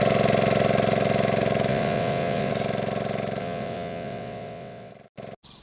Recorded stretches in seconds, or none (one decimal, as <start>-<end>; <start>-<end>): 0.0-1.7; 2.5-3.4; 4.9-5.6